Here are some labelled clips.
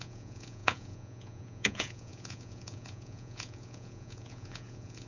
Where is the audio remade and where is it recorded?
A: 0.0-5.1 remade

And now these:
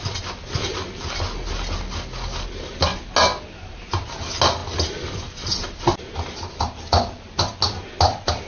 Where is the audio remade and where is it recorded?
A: 0.0-8.5 recorded